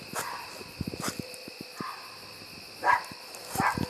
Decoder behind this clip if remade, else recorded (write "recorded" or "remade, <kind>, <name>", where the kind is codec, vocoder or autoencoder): recorded